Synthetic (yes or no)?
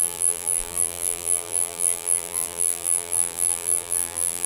yes